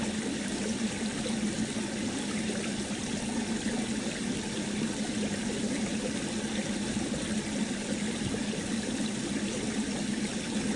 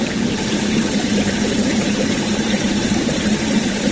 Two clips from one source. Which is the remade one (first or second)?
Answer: second